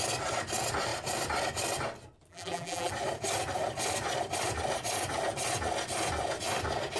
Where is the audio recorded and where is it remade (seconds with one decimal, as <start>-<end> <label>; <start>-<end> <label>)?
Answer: 0.0-2.3 recorded; 2.3-2.9 remade; 2.9-7.0 recorded